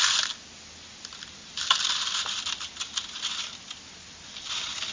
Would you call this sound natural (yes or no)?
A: yes